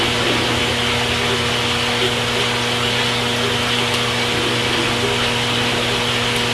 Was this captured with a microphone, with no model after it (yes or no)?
yes